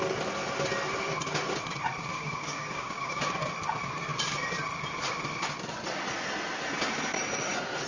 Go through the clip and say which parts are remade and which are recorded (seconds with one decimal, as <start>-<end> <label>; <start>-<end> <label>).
0.0-2.1 recorded; 2.1-3.3 remade; 3.3-7.9 recorded